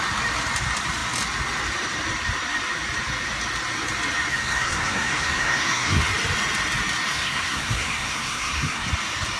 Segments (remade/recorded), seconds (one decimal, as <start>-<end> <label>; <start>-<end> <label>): 0.0-4.3 recorded; 4.3-6.0 remade; 6.0-7.1 recorded; 7.1-8.9 remade; 8.9-9.4 recorded